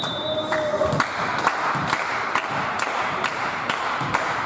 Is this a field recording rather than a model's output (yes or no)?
yes